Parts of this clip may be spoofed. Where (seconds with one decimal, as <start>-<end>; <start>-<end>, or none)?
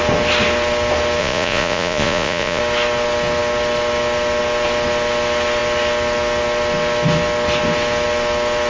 1.2-2.6